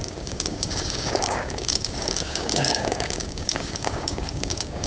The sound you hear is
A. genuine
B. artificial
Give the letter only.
B